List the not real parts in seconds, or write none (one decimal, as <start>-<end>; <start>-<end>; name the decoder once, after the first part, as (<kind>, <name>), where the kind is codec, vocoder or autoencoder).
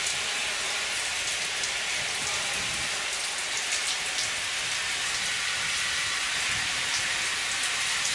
none